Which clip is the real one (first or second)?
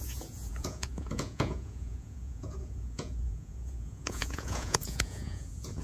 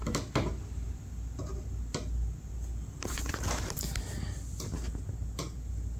second